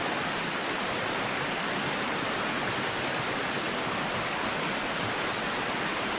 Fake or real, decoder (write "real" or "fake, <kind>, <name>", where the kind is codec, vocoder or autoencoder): real